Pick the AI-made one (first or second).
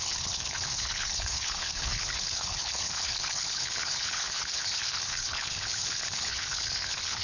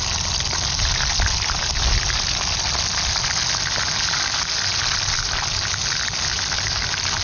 first